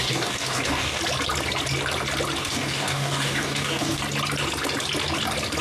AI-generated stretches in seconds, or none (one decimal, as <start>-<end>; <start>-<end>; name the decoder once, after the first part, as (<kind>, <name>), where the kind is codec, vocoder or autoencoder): 0.0-1.0 (codec, DAC); 2.4-4.0